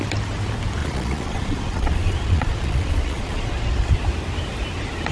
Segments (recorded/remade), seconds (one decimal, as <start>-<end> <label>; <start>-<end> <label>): 0.0-0.8 recorded; 0.8-3.9 remade; 3.9-5.1 recorded